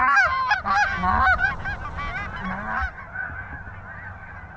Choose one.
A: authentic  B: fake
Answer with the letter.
A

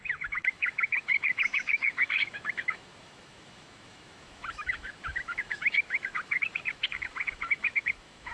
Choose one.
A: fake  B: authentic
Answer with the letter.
A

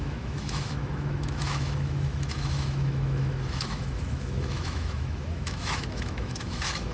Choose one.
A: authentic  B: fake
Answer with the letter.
B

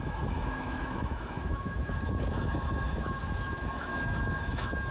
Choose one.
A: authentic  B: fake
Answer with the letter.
B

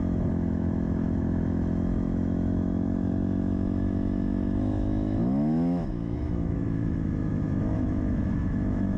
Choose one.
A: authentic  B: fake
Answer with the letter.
B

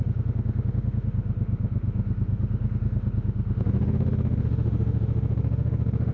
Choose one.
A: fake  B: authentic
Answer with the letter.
A